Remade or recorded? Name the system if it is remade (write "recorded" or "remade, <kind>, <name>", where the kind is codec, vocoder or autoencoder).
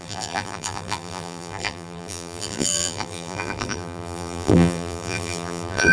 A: remade, vocoder, BigVGAN v2